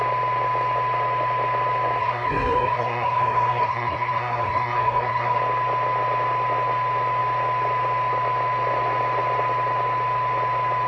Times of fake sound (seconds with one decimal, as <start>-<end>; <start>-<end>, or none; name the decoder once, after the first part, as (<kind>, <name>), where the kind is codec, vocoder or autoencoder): 2.0-5.4 (codec, SNAC)